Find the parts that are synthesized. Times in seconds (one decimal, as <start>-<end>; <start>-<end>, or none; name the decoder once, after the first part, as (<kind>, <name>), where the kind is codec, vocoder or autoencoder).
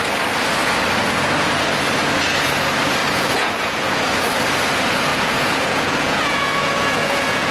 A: 3.0-4.0 (vocoder, Vocos); 5.1-7.5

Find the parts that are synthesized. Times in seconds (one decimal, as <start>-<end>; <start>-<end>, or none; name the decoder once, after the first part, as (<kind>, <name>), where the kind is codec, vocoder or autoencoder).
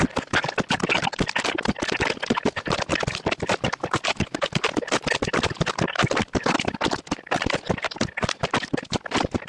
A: none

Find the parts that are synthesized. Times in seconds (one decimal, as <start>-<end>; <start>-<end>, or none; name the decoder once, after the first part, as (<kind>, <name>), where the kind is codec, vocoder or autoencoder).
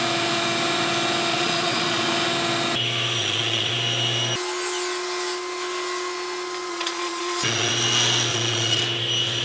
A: 1.3-2.1 (vocoder, Vocos); 3.2-3.7; 6.7-7.7; 8.3-8.8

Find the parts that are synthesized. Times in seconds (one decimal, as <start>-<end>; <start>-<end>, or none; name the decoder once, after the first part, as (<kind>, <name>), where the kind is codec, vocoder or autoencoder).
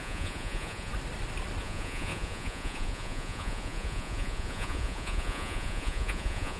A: 0.0-0.9 (vocoder, Vocos); 1.6-6.6